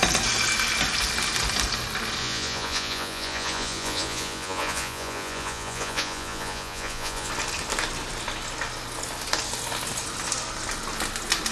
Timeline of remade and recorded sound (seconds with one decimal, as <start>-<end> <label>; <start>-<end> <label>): 0.0-2.2 recorded; 2.2-7.3 remade; 7.3-11.5 recorded